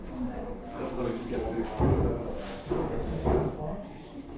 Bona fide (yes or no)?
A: no